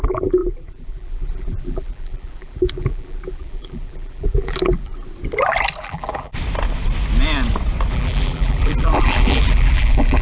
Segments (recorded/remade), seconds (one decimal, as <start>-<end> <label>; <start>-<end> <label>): 0.0-4.9 remade; 4.9-5.8 recorded; 5.8-6.3 remade; 6.3-7.9 recorded; 7.9-10.2 remade